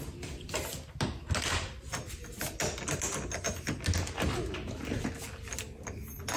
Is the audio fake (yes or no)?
no